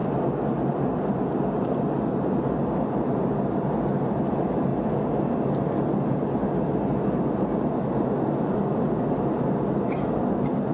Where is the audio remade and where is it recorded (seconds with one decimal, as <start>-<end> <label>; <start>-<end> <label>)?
0.0-10.7 recorded